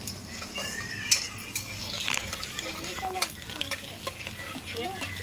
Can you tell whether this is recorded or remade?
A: remade